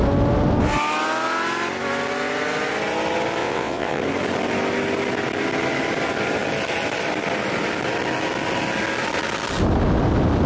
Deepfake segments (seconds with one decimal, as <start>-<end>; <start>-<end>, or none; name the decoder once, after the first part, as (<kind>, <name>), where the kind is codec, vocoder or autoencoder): 3.4-4.0 (vocoder, WaveNeXt)